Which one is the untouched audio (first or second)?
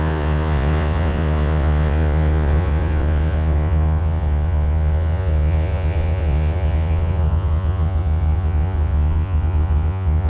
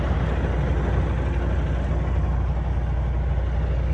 second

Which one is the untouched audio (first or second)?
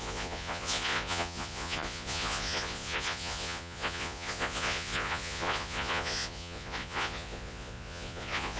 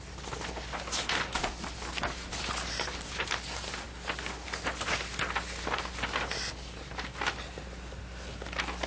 second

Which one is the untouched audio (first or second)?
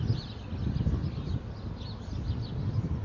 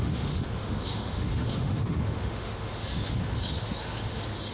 first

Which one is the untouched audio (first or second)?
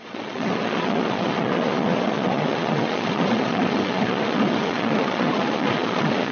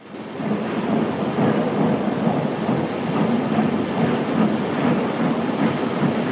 second